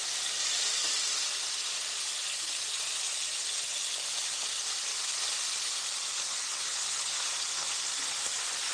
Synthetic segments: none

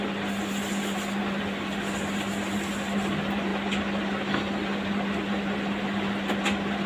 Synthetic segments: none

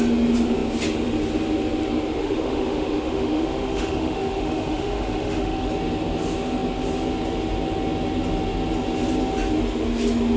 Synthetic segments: 2.2-5.7 (autoencoder, DAC-VAE)

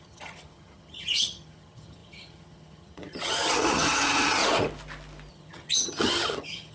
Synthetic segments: 0.0-4.4 (vocoder, HiFi-GAN); 5.3-6.7